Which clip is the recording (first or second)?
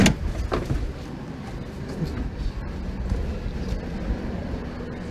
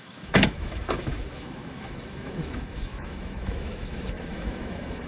first